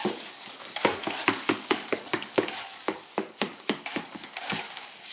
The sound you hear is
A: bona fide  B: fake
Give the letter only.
B